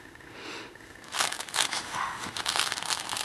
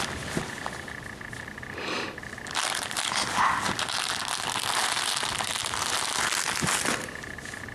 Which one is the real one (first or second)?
second